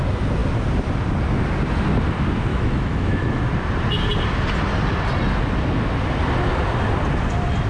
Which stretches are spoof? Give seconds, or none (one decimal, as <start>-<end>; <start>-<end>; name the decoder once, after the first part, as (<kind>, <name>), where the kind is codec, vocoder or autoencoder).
2.5-3.4 (autoencoder, DAC-VAE)